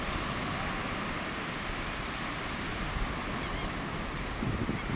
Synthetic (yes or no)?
no